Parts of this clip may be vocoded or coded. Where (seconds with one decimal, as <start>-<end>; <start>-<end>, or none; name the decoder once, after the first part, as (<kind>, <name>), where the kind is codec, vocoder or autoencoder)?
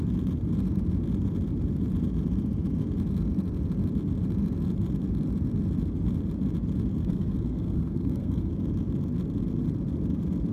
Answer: 7.0-8.5 (codec, SNAC)